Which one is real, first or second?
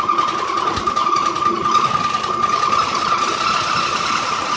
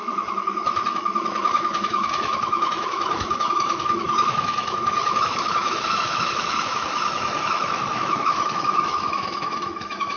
first